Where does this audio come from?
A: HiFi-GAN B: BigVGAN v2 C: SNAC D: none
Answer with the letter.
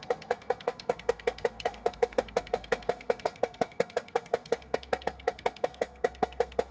C